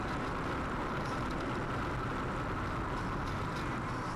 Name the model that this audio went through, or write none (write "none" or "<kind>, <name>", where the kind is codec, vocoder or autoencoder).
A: none